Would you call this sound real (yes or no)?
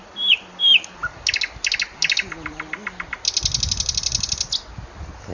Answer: yes